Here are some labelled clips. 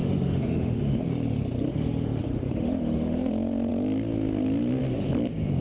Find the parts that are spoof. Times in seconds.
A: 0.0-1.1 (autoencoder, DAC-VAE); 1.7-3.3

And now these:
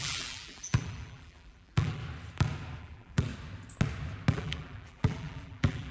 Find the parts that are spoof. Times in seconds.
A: 0.0-2.0 (vocoder, BigVGAN v2); 2.8-3.3; 4.3-5.9

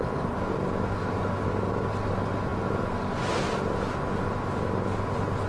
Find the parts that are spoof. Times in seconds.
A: none

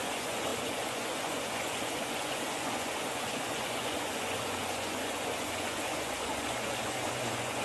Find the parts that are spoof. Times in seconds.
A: 0.0-7.6 (vocoder, Vocos)

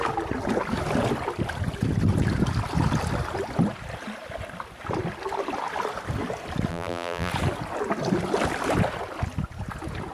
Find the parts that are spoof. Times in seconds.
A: 6.7-7.3 (vocoder, BigVGAN v2)

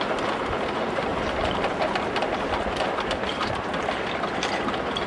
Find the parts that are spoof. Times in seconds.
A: 1.1-3.7 (vocoder, BigVGAN v2)

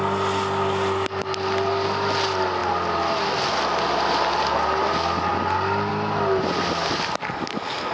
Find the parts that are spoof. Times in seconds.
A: none